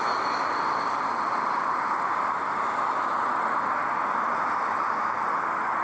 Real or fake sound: real